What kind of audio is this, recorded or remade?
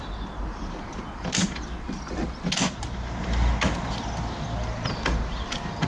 recorded